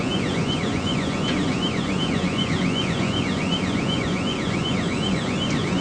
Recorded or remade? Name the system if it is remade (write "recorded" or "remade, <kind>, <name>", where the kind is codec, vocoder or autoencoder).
remade, vocoder, Vocos